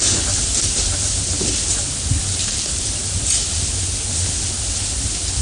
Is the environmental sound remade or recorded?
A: recorded